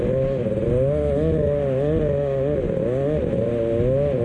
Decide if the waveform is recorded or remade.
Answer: recorded